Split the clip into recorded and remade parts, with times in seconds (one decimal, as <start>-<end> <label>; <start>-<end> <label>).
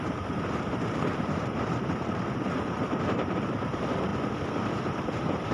0.0-4.1 remade; 4.1-4.8 recorded; 4.8-5.5 remade